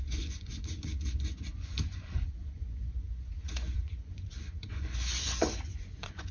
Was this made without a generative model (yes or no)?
no